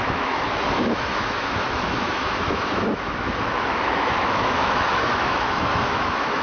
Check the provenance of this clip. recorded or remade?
remade